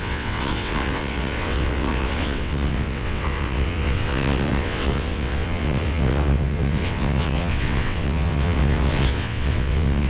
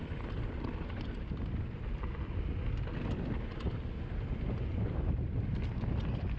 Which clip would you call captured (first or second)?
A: second